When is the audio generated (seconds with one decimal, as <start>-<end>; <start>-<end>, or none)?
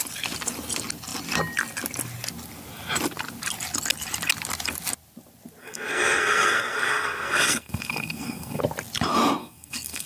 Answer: 5.6-8.6; 9.4-10.1